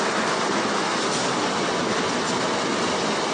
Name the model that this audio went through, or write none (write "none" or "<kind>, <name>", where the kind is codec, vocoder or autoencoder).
none